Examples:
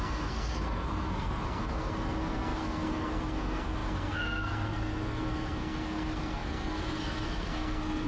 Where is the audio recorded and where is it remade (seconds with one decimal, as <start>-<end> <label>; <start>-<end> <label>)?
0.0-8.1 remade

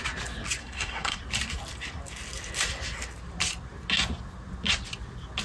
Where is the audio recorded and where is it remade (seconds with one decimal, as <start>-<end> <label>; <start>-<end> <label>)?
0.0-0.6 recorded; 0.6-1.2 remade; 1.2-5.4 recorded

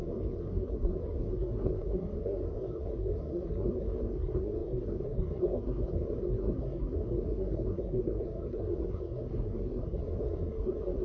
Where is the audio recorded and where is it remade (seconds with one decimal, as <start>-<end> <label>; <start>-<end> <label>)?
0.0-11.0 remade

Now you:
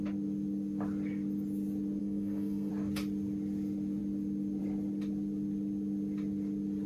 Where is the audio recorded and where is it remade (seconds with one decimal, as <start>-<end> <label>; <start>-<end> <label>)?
0.0-2.0 recorded; 2.0-2.7 remade; 2.7-6.9 recorded